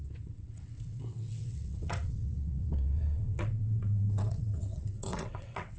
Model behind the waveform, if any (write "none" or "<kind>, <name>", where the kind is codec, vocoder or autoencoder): vocoder, WaveNeXt